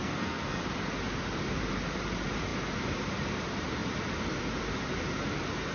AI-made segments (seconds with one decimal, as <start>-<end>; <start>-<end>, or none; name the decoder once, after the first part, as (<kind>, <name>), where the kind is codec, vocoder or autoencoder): 0.0-0.6 (codec, SNAC)